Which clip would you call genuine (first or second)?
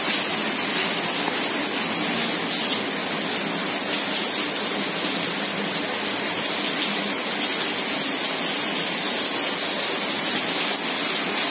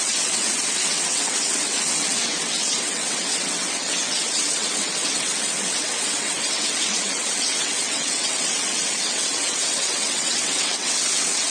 first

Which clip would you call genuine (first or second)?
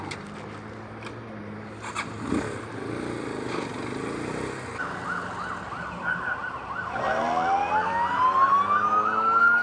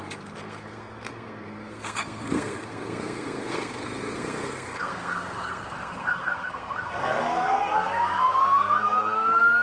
first